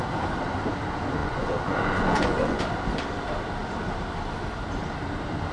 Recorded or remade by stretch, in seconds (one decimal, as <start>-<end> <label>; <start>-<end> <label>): 0.0-1.2 recorded; 1.2-2.6 remade; 2.6-5.5 recorded